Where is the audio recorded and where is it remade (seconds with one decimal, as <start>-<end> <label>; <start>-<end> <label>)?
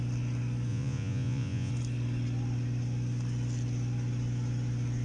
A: 0.0-0.7 recorded; 0.7-1.7 remade; 1.7-5.0 recorded